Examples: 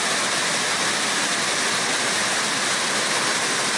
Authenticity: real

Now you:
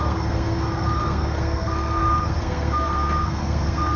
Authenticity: fake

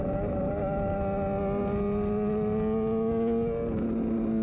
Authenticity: real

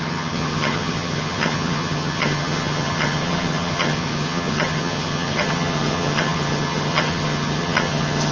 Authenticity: fake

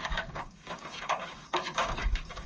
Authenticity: fake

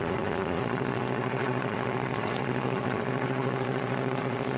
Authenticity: fake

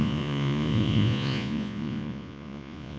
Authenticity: fake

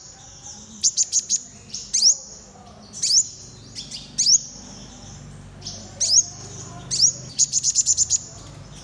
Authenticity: real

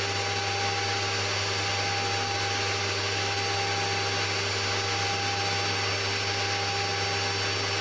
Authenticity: real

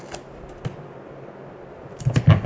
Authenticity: real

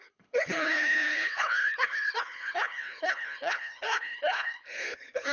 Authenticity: fake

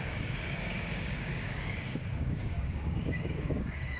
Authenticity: fake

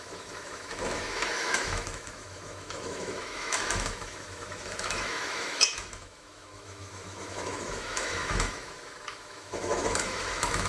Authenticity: fake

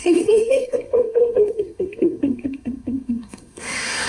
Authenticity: fake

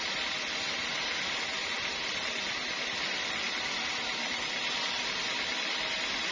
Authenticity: real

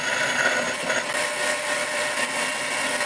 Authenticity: real